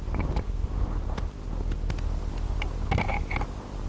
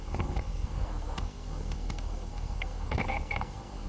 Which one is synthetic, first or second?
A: second